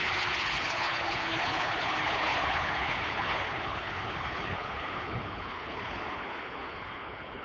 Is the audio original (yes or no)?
no